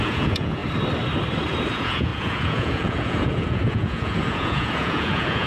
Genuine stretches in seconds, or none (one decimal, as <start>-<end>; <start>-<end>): 0.6-1.7